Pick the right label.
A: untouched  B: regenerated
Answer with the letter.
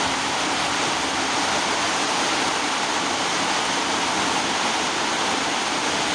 A